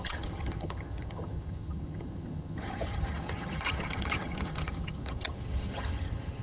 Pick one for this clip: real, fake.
fake